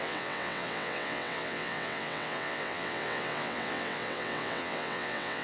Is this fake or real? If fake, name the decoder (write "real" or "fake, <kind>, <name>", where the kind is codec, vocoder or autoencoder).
fake, vocoder, WaveNeXt